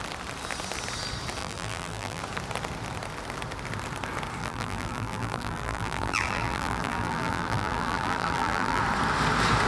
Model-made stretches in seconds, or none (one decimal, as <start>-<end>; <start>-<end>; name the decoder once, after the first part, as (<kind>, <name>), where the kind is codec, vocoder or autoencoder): 1.4-2.2 (vocoder, BigVGAN v2); 4.4-8.8